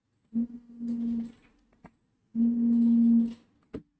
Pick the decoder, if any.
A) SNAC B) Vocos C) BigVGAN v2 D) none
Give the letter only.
D